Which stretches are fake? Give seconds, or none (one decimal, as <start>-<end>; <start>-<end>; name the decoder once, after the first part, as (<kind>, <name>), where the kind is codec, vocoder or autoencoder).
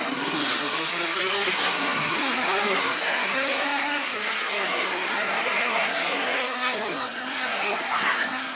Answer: 0.0-8.6 (codec, SNAC)